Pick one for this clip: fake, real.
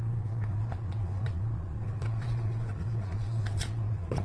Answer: fake